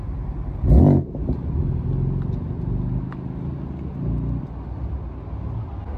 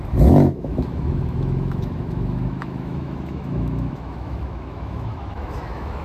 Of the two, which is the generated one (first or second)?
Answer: second